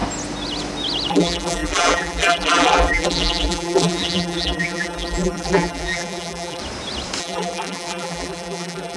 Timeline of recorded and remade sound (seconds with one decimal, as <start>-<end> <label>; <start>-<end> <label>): 0.0-1.1 recorded; 1.1-6.6 remade; 6.6-7.2 recorded; 7.2-9.0 remade